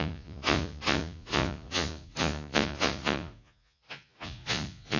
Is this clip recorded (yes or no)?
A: no